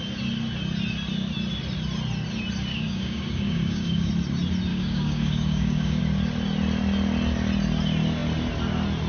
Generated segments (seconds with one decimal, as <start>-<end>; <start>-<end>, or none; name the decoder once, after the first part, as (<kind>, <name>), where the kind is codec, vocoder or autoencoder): 2.7-4.1 (codec, DAC); 4.7-6.0